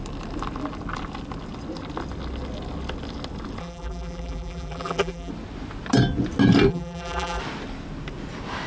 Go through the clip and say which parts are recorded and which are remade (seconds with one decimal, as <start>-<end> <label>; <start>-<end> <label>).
0.0-3.6 recorded; 3.6-5.3 remade; 5.3-6.7 recorded; 6.7-7.4 remade; 7.4-8.7 recorded